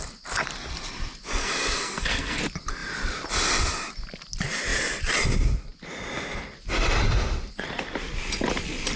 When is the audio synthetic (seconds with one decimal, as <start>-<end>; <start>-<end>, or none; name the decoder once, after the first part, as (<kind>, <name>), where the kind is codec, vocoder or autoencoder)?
1.4-2.4 (codec, SNAC)